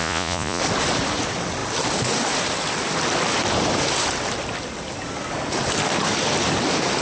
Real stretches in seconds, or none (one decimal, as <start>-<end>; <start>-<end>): 0.6-7.0